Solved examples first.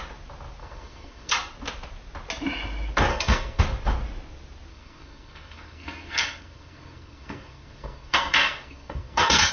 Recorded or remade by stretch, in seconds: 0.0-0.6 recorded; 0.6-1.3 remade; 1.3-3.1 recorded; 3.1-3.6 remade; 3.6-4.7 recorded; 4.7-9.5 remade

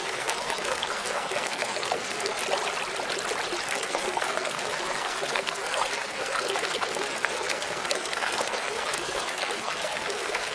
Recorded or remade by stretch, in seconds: 0.0-2.4 remade; 2.4-3.6 recorded; 3.6-10.5 remade

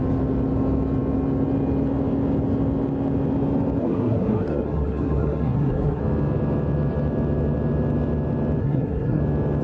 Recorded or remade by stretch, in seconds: 0.0-3.8 recorded; 3.8-6.0 remade; 6.0-8.6 recorded; 8.6-9.2 remade; 9.2-9.6 recorded

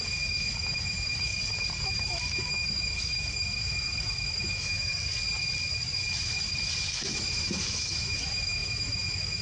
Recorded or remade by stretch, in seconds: 0.0-1.3 remade; 1.3-1.9 recorded; 1.9-4.9 remade; 4.9-6.8 recorded; 6.8-9.4 remade

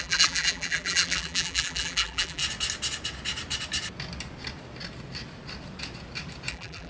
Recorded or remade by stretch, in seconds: 0.0-2.4 remade; 2.4-6.5 recorded; 6.5-6.9 remade

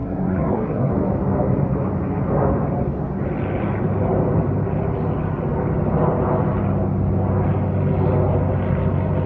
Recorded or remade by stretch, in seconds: 0.0-0.9 remade; 0.9-9.3 recorded